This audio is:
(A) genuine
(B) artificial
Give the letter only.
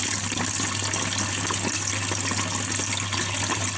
A